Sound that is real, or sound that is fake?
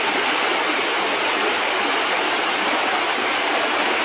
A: real